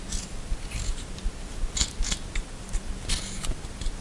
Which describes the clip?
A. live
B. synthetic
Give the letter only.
A